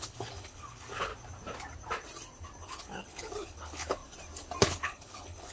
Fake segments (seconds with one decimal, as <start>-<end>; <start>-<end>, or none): 0.0-1.1; 2.6-4.0; 4.6-5.5